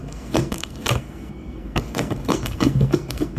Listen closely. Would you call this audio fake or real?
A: fake